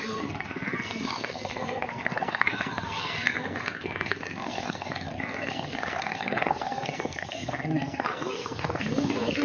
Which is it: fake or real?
fake